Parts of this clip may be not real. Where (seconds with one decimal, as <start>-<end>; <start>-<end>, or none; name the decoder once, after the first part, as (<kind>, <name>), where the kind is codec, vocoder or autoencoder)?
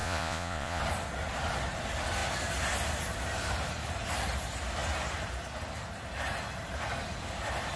0.0-0.8 (vocoder, Vocos)